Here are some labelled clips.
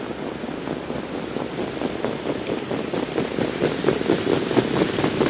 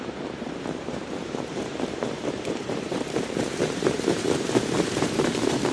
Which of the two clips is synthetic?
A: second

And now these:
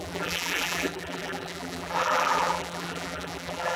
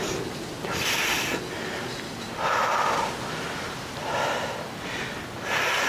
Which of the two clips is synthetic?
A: first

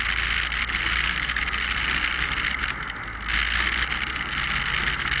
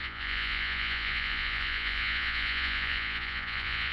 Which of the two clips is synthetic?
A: second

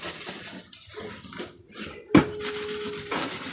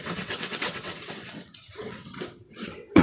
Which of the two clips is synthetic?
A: second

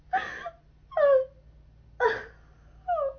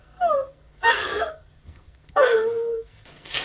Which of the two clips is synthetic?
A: second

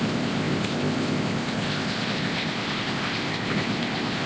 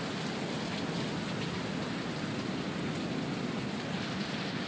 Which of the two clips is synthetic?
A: first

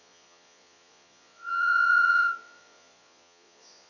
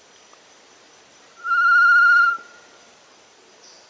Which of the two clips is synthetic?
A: first